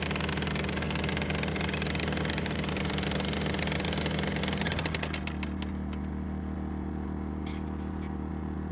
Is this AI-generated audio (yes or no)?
no